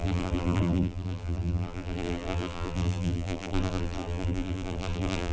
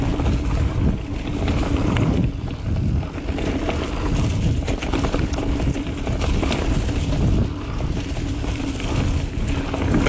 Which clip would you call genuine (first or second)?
second